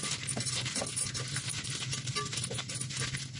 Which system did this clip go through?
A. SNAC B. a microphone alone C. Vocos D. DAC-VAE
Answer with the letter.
B